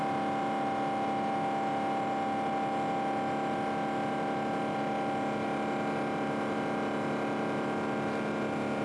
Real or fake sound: real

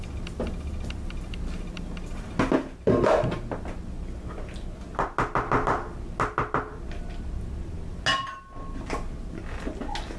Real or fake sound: real